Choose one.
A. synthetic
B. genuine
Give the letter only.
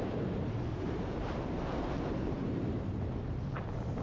A